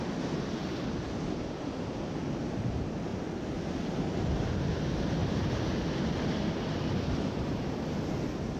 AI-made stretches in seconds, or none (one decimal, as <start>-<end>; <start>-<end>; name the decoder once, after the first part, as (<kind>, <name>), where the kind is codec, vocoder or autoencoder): none